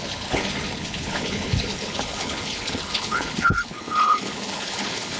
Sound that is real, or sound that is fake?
fake